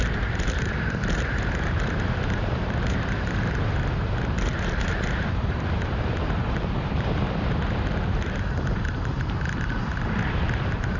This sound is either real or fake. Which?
fake